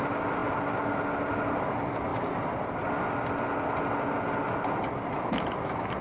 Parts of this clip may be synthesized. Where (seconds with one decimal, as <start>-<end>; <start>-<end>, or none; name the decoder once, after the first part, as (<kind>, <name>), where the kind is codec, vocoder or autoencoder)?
none